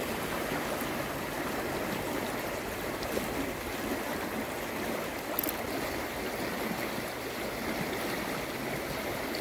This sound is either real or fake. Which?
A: real